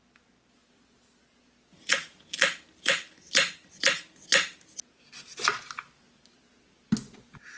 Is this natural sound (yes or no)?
yes